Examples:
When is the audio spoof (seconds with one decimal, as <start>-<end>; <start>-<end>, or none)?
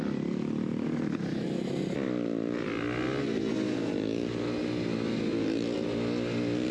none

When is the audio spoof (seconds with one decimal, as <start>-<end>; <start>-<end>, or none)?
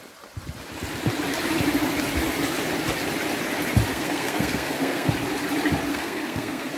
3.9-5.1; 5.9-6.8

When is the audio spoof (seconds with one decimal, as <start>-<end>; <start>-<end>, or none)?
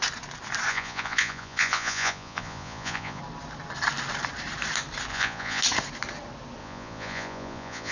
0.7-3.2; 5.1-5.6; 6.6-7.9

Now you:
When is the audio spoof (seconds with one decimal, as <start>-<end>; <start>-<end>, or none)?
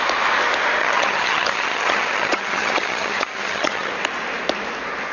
0.8-3.9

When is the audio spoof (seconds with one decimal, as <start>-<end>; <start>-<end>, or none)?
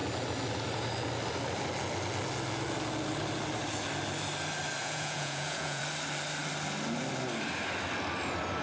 4.8-5.8